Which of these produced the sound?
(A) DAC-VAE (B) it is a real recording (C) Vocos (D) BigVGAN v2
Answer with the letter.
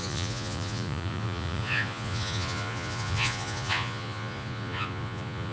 C